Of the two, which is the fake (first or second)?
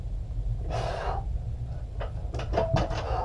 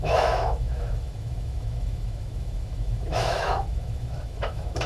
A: second